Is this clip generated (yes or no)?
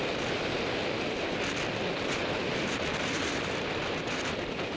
no